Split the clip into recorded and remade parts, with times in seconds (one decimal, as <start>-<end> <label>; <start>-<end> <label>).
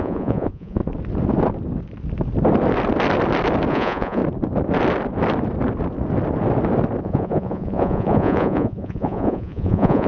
0.0-0.8 remade; 0.8-3.7 recorded; 3.7-4.2 remade; 4.2-7.0 recorded; 7.0-10.1 remade